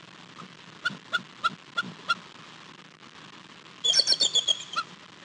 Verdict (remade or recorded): recorded